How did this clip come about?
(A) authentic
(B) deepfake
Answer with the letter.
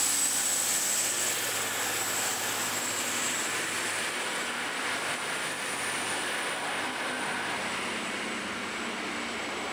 A